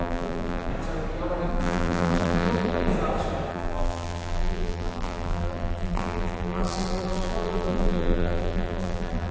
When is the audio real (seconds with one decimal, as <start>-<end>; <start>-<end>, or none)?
0.7-1.5; 2.9-3.5